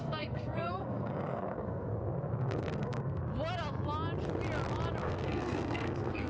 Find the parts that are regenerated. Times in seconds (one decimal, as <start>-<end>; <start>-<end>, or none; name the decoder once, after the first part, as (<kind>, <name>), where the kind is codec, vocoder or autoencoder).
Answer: 0.0-1.9 (codec, SNAC); 2.4-3.2; 5.0-6.3